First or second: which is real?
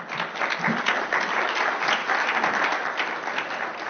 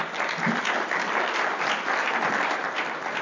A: first